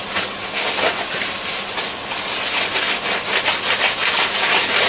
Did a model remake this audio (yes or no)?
no